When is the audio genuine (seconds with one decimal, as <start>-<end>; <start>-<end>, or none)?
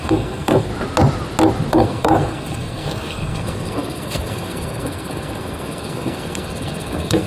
0.7-1.7